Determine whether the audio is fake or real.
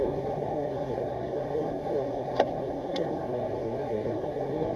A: fake